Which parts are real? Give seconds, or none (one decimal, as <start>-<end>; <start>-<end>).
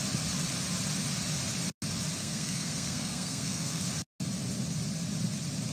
0.0-2.2; 3.8-5.7